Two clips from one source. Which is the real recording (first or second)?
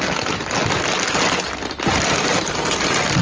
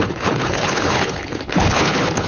first